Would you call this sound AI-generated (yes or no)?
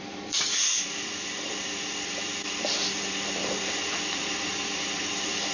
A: yes